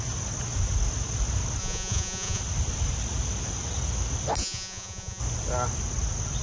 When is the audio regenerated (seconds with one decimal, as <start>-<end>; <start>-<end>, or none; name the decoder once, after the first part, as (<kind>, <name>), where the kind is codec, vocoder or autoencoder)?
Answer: 1.6-2.4 (vocoder, Vocos); 4.4-5.2